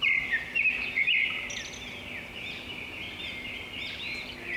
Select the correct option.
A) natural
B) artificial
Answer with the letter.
A